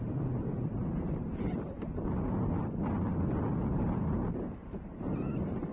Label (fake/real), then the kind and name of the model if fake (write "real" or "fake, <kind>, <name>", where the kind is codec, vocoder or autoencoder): real